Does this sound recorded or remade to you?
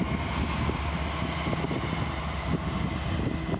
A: recorded